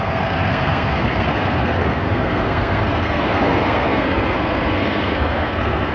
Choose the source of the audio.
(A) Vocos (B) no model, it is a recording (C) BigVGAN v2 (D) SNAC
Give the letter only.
D